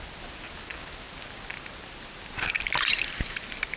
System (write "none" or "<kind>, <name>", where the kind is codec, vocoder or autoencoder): none